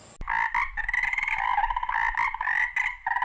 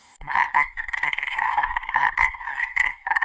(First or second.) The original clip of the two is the first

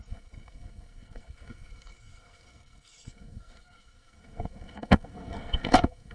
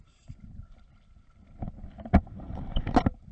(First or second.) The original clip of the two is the second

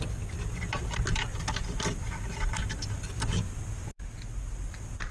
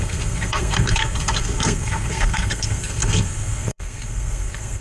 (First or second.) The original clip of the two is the first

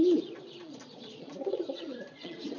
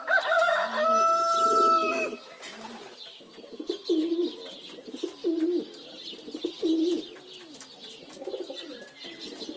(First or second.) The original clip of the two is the second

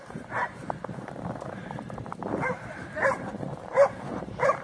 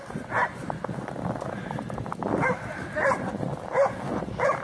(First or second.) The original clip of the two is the second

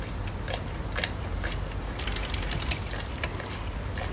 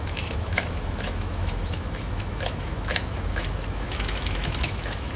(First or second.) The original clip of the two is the first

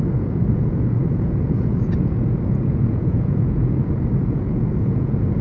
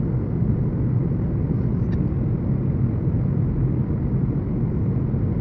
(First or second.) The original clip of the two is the second